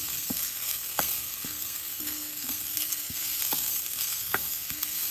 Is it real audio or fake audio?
fake